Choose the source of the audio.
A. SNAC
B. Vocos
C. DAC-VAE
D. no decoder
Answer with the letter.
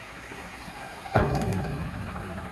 A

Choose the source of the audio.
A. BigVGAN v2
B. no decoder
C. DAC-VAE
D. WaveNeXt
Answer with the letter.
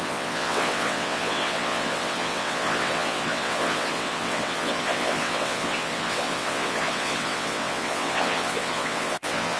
D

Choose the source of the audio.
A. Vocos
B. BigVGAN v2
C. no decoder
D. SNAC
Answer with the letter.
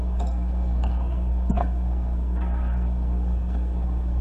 D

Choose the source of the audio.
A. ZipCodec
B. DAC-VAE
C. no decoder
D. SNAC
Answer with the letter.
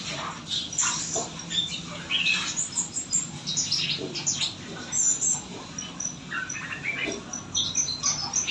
C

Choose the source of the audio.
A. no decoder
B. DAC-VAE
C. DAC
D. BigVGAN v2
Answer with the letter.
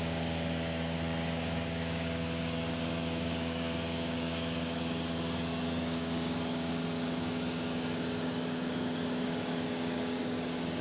C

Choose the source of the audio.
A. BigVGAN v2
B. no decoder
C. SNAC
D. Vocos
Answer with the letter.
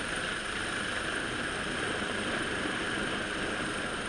B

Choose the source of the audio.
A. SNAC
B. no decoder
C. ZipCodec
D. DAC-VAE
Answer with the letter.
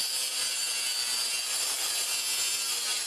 B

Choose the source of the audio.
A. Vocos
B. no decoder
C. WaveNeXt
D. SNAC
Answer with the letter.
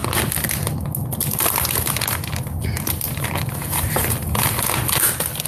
B